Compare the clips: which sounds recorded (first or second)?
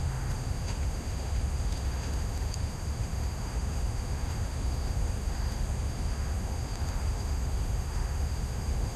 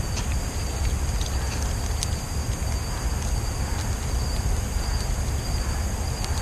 second